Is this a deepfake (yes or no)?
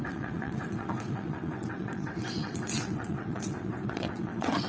yes